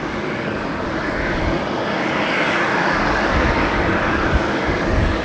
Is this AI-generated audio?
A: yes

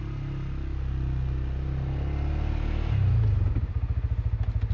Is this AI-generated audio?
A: no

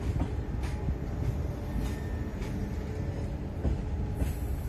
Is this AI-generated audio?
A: no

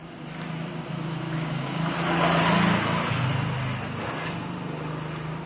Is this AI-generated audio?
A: no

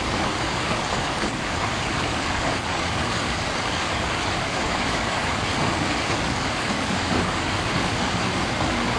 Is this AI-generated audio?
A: yes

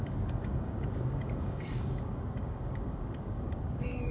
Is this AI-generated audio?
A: yes